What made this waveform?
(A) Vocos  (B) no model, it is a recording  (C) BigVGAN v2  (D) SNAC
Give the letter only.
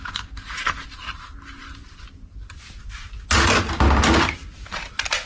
B